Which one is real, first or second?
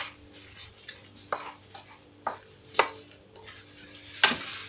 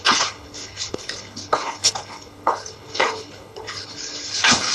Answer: first